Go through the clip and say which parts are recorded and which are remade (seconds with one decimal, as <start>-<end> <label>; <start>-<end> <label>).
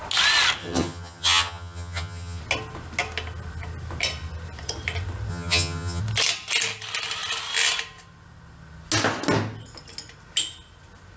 0.0-0.6 recorded; 0.6-2.4 remade; 2.4-5.3 recorded; 5.3-6.0 remade; 6.0-11.2 recorded